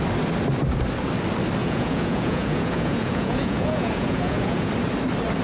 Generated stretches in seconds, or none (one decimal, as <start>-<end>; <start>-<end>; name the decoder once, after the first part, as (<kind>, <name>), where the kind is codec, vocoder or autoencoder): 1.6-4.7 (vocoder, Vocos)